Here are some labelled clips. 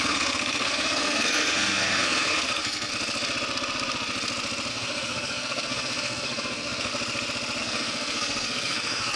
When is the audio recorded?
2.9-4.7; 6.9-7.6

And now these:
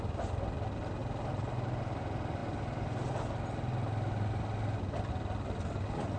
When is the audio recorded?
0.0-6.2